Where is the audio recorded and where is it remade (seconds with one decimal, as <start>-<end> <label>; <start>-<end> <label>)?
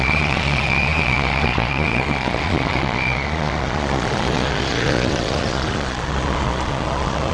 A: 0.0-7.3 remade